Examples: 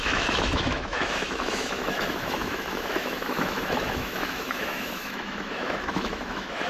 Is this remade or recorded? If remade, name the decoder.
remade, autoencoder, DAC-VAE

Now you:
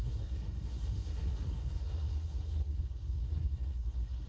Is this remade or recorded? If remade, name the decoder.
remade, codec, SNAC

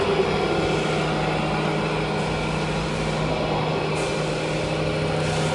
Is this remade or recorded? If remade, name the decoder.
recorded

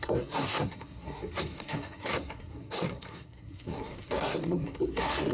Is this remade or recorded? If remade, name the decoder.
remade, codec, SNAC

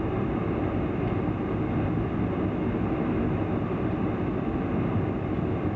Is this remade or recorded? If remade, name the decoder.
recorded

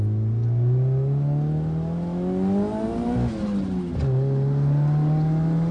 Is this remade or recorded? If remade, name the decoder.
recorded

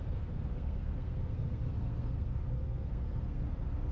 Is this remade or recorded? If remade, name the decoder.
remade, codec, SNAC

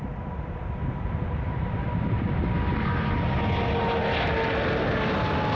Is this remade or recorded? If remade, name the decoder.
recorded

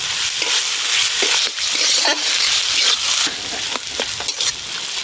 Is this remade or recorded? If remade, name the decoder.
recorded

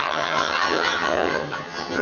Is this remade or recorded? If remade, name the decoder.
remade, vocoder, HiFi-GAN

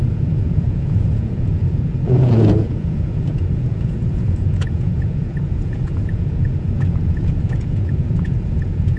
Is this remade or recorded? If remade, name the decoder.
remade, vocoder, Vocos